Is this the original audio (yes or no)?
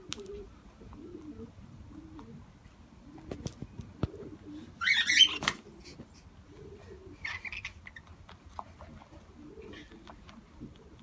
yes